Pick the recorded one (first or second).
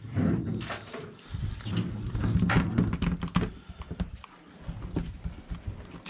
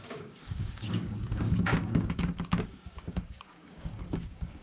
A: first